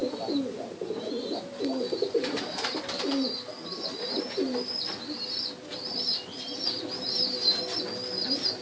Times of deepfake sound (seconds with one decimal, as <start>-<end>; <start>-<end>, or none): 0.0-3.3